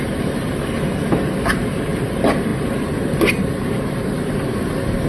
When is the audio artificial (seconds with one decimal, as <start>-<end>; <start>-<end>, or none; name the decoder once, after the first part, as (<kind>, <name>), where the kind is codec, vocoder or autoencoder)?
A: none